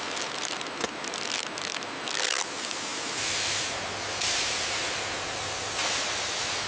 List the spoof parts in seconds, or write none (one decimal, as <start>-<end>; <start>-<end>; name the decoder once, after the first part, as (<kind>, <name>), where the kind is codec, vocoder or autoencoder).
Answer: none